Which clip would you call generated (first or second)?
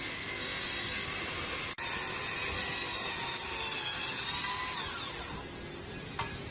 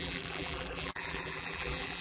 second